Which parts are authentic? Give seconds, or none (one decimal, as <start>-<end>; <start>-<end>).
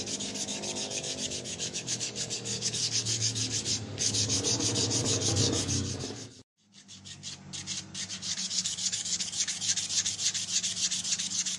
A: 7.2-8.3; 9.7-11.2